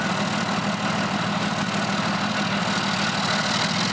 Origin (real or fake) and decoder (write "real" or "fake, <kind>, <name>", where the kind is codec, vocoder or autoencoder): real